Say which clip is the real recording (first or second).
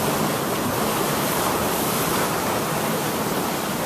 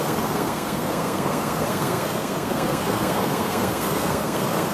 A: first